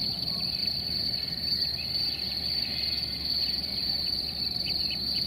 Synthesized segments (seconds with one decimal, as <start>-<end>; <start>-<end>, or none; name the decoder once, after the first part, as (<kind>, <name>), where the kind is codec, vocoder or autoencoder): 0.6-2.0 (vocoder, BigVGAN v2); 3.8-5.3